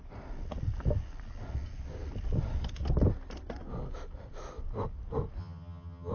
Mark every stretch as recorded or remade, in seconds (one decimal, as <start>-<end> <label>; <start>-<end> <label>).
0.0-5.4 recorded; 5.4-6.1 remade